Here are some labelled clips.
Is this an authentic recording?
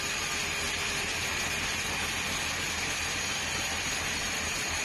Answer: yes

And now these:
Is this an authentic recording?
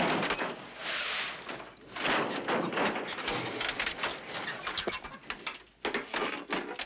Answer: yes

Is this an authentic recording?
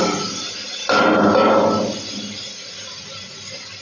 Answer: yes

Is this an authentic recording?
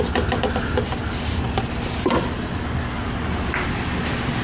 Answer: yes